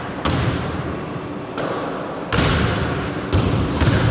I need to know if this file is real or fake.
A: real